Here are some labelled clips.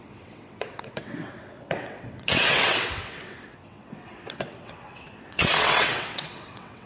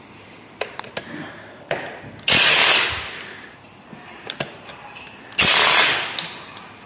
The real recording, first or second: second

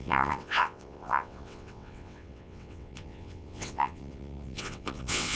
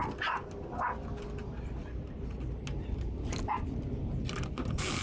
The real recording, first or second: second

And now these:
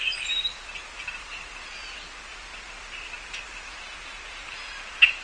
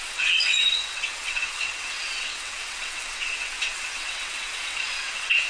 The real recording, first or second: first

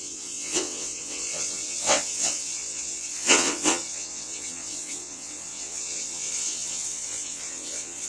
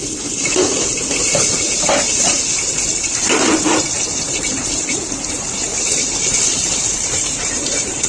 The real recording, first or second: second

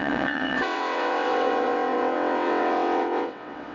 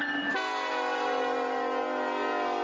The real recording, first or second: second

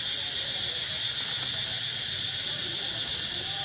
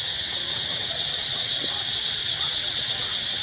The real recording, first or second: first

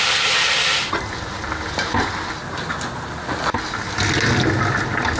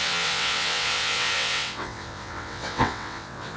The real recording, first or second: first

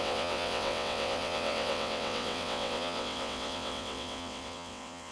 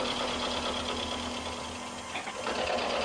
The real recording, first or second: second